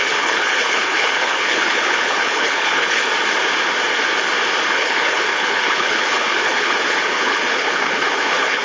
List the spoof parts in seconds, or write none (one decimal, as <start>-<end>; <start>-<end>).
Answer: 0.0-3.1; 4.7-8.6